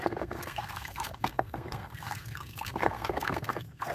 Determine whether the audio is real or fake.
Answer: fake